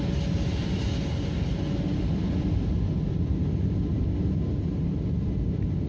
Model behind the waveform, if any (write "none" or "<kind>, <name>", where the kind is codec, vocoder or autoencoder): none